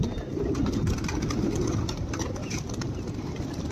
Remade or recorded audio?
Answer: recorded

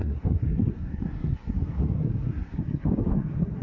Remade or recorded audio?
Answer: remade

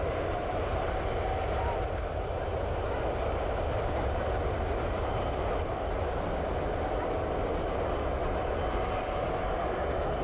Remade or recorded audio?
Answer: recorded